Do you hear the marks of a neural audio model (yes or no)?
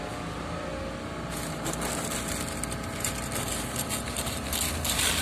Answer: no